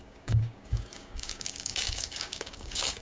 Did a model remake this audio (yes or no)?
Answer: yes